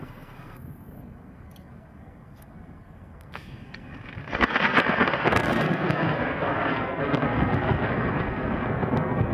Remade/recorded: remade